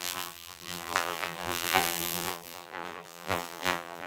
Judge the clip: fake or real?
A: fake